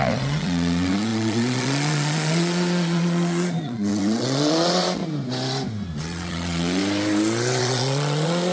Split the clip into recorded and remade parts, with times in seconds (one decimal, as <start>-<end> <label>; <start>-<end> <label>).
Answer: 0.0-5.0 remade; 5.0-6.0 recorded; 6.0-6.8 remade; 6.8-7.6 recorded; 7.6-8.5 remade